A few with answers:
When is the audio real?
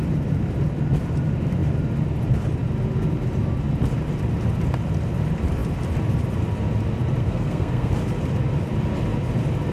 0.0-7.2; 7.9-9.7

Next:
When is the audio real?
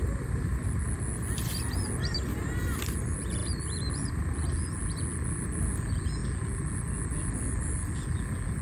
0.0-8.6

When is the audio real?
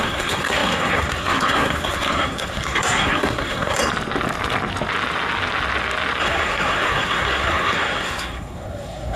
3.8-6.2